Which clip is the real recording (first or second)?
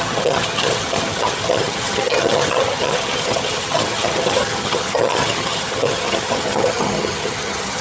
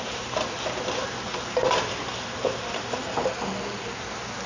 second